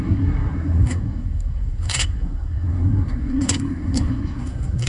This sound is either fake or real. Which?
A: fake